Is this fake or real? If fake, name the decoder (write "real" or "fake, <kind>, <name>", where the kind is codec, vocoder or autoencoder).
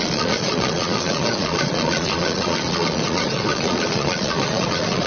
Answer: fake, vocoder, Vocos